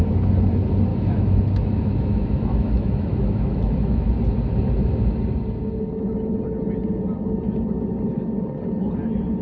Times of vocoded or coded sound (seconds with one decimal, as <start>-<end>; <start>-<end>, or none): 0.9-4.1